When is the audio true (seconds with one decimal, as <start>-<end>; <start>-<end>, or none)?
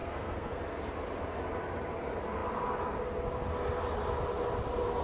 0.6-5.0